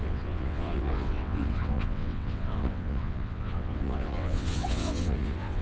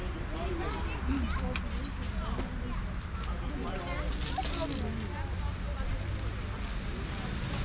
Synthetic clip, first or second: first